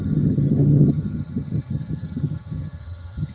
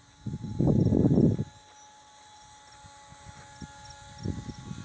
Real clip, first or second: second